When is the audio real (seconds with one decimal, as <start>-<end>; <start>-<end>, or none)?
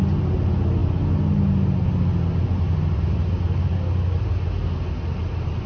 0.0-5.7